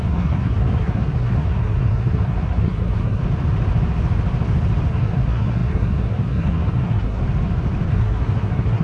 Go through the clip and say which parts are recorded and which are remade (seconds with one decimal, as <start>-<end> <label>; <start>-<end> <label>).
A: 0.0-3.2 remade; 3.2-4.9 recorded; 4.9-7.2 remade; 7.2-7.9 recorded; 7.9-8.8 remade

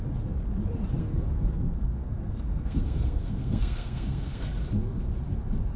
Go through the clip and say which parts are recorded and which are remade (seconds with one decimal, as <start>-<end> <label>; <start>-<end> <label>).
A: 0.0-1.0 recorded; 1.0-4.5 remade; 4.5-5.8 recorded

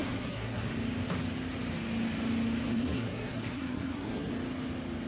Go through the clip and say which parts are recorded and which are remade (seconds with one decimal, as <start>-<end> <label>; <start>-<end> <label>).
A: 0.0-0.7 remade; 0.7-2.7 recorded; 2.7-4.3 remade; 4.3-5.1 recorded

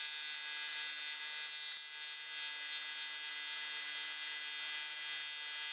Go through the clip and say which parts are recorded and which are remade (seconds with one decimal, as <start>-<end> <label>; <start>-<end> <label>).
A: 0.0-5.7 recorded

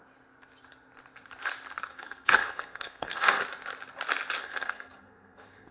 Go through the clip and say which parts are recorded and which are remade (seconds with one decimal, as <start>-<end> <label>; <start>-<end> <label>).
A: 0.0-1.9 recorded; 1.9-3.4 remade; 3.4-4.4 recorded; 4.4-5.7 remade

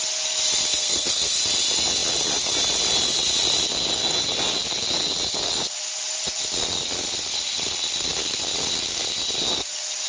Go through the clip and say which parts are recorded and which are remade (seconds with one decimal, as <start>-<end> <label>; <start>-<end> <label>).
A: 0.0-0.7 recorded; 0.7-1.4 remade; 1.4-10.1 recorded

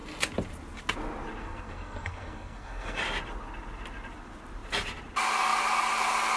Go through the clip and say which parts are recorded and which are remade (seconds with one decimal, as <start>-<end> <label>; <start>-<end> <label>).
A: 0.0-1.4 recorded; 1.4-3.0 remade; 3.0-6.4 recorded